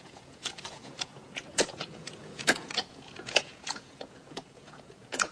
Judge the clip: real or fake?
fake